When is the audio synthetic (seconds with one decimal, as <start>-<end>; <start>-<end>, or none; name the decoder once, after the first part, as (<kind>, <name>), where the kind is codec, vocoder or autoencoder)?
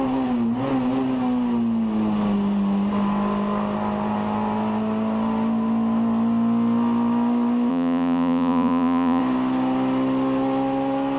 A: 7.7-9.2 (vocoder, Vocos)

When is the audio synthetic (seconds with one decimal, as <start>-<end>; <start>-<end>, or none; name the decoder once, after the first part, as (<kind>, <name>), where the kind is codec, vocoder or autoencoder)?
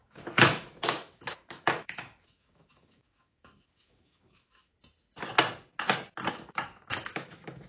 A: 0.0-4.7 (autoencoder, DAC-VAE); 6.3-7.7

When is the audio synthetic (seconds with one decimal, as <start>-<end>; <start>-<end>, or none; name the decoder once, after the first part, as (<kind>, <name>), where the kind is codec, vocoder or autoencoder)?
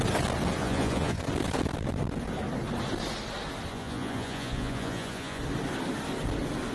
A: 0.6-1.2 (vocoder, Vocos); 3.7-5.4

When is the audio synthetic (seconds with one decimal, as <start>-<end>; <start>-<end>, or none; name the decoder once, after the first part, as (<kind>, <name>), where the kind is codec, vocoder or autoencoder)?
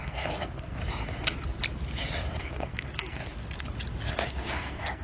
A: 0.0-0.8 (codec, SNAC); 2.4-3.2; 4.1-5.0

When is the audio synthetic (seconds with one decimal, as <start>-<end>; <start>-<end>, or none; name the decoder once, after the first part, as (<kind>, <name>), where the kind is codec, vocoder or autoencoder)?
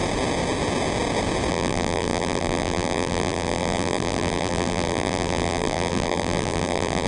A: 1.5-7.1 (vocoder, BigVGAN v2)